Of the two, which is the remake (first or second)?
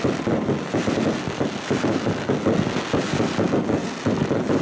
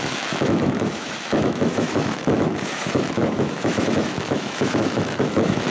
second